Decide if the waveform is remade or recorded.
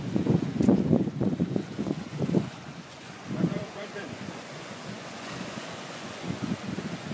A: remade